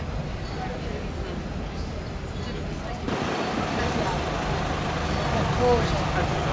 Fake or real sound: real